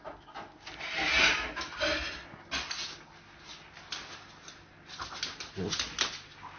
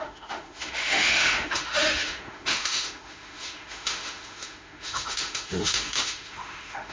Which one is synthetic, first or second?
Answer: second